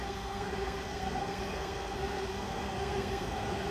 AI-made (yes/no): yes